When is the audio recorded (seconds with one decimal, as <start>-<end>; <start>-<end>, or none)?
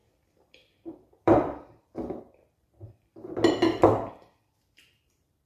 3.3-3.9